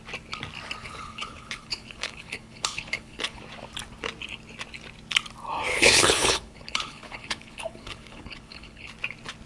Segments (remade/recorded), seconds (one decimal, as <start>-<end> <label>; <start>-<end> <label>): 0.0-0.8 recorded; 0.8-3.4 remade; 3.4-5.7 recorded; 5.7-8.9 remade; 8.9-9.5 recorded